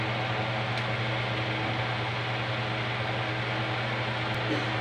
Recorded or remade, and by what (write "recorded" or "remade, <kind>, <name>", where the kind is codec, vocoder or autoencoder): recorded